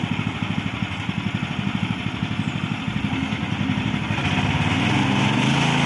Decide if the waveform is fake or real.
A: real